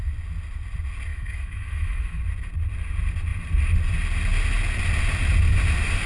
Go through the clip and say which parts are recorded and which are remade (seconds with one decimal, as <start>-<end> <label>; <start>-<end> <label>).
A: 0.0-1.1 recorded; 1.1-2.2 remade; 2.2-6.1 recorded